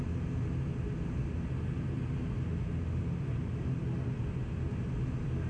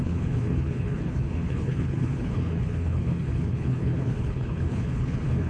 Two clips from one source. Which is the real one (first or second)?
first